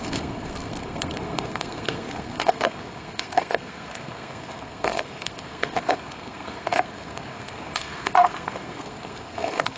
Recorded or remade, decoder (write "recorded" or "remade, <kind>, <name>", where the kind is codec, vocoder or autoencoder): remade, codec, SNAC